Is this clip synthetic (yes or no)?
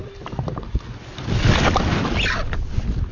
no